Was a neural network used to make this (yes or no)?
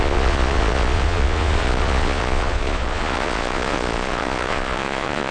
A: yes